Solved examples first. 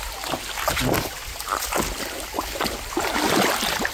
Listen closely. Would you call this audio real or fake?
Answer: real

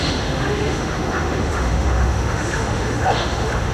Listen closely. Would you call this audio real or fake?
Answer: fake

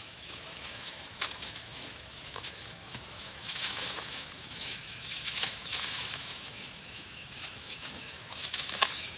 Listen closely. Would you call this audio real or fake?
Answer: fake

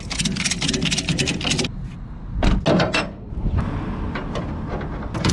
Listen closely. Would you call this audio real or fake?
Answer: real